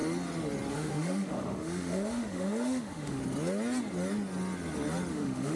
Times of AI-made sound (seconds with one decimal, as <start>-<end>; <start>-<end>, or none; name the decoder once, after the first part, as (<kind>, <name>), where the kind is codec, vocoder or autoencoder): 0.7-3.2 (autoencoder, DAC-VAE); 5.1-5.5